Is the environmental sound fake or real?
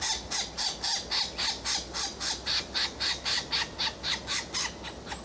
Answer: real